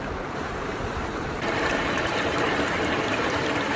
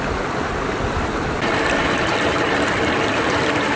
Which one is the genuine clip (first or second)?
second